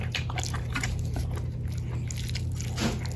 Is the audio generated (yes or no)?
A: no